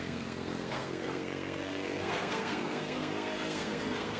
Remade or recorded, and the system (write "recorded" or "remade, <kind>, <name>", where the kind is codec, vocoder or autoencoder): remade, codec, SNAC